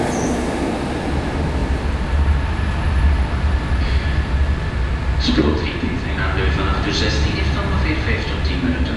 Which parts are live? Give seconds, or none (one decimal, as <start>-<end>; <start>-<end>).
0.0-5.4; 6.2-9.0